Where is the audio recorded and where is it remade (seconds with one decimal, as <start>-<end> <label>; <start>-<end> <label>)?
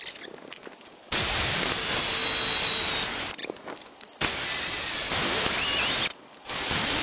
0.0-0.6 recorded; 0.6-1.6 remade; 1.6-3.4 recorded; 3.4-5.9 remade; 5.9-7.0 recorded